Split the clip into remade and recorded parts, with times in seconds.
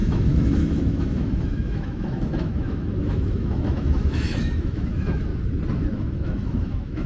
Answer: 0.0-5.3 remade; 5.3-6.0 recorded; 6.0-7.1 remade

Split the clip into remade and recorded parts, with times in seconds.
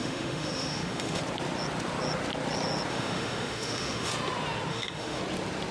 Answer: 0.0-1.2 remade; 1.2-2.9 recorded; 2.9-4.1 remade; 4.1-4.7 recorded; 4.7-5.2 remade; 5.2-5.7 recorded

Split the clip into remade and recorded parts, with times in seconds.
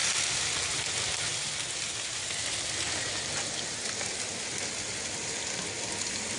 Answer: 0.0-6.4 recorded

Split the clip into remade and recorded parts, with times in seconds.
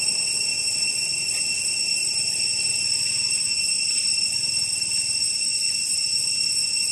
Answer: 0.0-6.9 recorded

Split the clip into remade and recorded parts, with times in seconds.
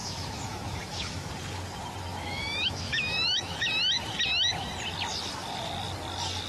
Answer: 0.0-1.3 remade; 1.3-2.1 recorded; 2.1-3.7 remade; 3.7-6.5 recorded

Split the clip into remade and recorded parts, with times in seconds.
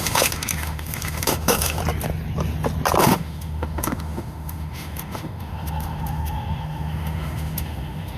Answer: 0.0-1.8 remade; 1.8-3.0 recorded; 3.0-8.2 remade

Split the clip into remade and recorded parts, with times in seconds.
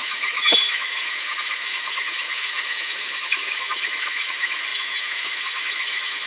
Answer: 0.0-6.3 remade